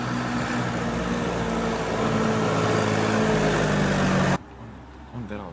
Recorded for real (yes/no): yes